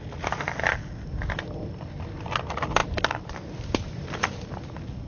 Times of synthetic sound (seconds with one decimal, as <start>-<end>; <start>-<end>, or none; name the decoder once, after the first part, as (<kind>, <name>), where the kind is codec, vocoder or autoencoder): none